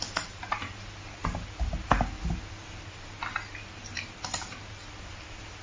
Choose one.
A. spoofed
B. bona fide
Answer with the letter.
B